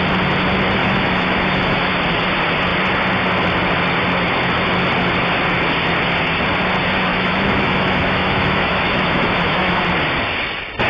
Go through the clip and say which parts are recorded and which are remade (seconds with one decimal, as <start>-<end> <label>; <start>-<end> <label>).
0.0-0.8 recorded; 0.8-1.9 remade; 1.9-7.1 recorded; 7.1-9.8 remade; 9.8-10.9 recorded